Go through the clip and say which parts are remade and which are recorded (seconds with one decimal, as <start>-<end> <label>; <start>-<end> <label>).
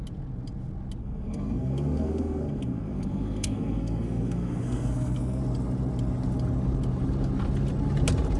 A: 0.0-1.0 recorded; 1.0-5.4 remade; 5.4-8.4 recorded